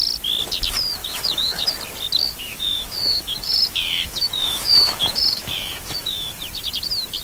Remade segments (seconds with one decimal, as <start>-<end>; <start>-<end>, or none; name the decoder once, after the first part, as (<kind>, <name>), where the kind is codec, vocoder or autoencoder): 1.0-1.7 (autoencoder, DAC-VAE); 2.2-6.5

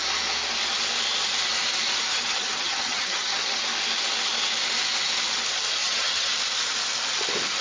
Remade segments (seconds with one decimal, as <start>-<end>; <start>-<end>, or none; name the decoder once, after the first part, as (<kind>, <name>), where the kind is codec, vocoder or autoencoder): 2.1-3.6 (vocoder, HiFi-GAN); 5.8-6.3